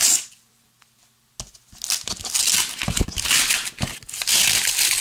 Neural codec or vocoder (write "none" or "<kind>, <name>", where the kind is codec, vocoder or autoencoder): none